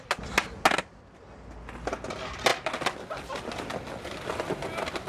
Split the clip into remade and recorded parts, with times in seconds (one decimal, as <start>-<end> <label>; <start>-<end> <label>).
0.0-5.1 recorded